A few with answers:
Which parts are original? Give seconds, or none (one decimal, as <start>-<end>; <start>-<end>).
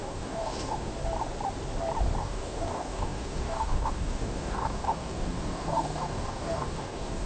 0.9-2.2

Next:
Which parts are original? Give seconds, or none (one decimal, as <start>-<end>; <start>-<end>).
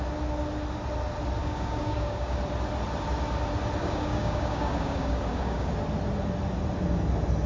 0.0-1.4; 2.4-3.8; 5.7-7.5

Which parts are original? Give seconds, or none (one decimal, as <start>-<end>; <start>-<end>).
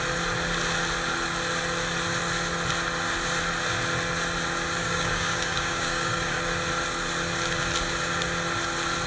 0.0-4.8; 6.4-9.1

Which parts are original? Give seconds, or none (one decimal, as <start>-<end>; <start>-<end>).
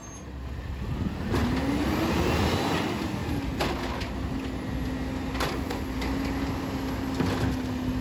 0.0-8.0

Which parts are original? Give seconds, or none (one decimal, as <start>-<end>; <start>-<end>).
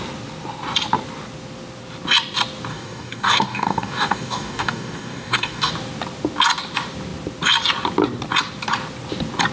0.0-2.7; 5.7-9.5